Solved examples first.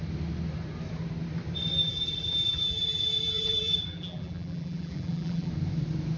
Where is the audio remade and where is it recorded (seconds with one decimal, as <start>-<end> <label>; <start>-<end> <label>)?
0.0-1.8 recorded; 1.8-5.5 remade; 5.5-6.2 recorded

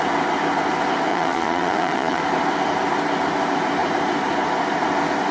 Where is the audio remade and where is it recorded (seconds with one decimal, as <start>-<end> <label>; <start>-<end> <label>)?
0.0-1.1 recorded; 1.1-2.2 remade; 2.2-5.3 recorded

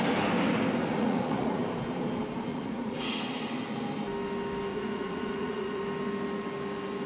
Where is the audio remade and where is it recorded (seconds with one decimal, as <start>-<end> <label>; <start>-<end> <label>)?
0.0-0.8 recorded; 0.8-1.6 remade; 1.6-2.5 recorded; 2.5-3.2 remade; 3.2-4.7 recorded; 4.7-5.8 remade; 5.8-7.1 recorded

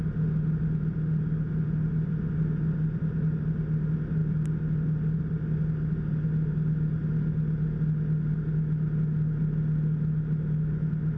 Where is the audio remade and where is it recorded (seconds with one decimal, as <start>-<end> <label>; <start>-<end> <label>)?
0.0-11.2 recorded